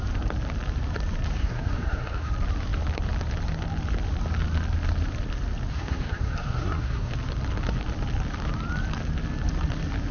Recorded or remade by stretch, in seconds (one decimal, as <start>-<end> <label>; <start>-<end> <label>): 0.0-1.4 recorded; 1.4-2.3 remade; 2.3-5.7 recorded; 5.7-7.1 remade; 7.1-10.1 recorded